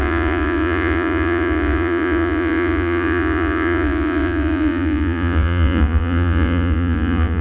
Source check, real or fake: fake